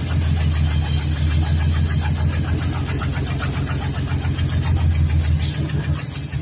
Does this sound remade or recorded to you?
recorded